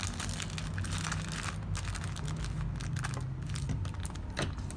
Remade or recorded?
recorded